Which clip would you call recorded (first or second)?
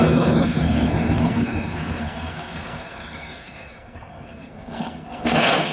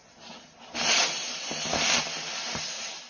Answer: second